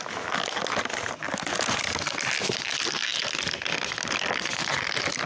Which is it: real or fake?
real